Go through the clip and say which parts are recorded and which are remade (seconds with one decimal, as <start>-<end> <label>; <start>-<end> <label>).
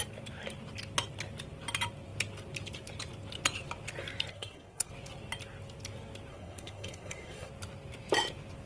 0.0-4.3 recorded; 4.3-4.9 remade; 4.9-6.3 recorded; 6.3-7.5 remade; 7.5-8.7 recorded